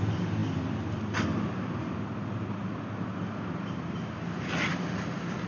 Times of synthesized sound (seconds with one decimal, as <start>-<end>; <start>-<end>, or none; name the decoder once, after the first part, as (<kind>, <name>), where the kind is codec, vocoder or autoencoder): none